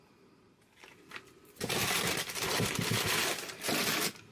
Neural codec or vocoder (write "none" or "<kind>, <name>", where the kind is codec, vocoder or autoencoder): none